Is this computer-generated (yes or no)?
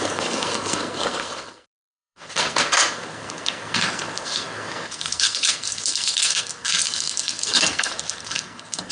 yes